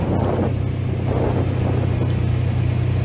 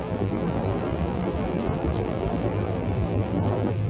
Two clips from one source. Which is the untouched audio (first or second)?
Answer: first